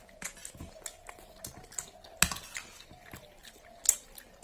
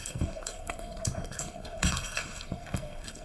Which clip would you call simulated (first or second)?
second